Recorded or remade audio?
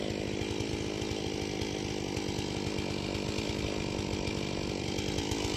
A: remade